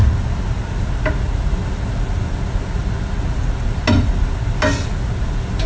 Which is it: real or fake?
real